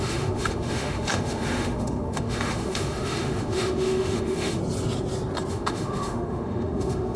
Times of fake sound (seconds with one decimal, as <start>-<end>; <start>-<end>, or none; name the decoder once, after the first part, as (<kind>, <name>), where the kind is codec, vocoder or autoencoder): 0.0-4.6 (autoencoder, DAC-VAE); 5.5-7.2

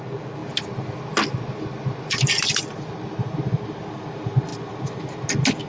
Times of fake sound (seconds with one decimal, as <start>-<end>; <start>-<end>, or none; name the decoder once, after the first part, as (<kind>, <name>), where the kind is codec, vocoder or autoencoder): none

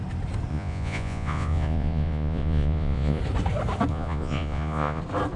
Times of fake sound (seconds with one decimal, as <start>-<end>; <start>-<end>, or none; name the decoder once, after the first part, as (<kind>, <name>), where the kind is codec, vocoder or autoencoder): 0.5-3.2 (vocoder, Vocos); 3.9-5.0

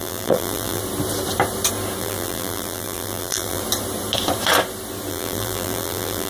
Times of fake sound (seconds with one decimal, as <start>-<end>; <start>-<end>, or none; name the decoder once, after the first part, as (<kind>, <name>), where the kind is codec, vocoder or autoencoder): 0.0-0.8 (vocoder, BigVGAN v2); 2.0-3.6; 5.1-6.3

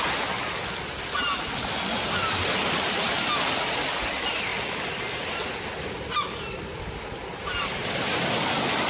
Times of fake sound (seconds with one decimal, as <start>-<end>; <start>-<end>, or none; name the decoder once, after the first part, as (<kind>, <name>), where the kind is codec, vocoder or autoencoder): none

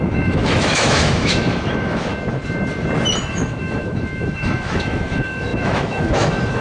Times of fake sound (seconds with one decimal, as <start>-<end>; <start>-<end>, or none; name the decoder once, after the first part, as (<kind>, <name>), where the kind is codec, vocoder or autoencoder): 0.0-2.1 (autoencoder, DAC-VAE); 3.3-6.6

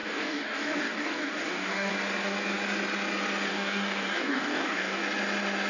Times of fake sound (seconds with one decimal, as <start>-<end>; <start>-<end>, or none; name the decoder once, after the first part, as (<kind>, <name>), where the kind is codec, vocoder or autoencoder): 0.0-1.9 (codec, DAC); 3.5-5.0

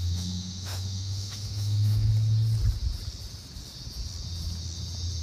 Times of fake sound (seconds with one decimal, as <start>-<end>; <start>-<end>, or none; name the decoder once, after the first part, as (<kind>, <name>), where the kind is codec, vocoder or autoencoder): 0.0-2.1 (autoencoder, DAC-VAE)